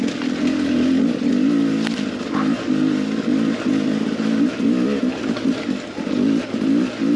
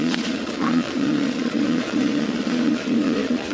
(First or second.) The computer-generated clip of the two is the second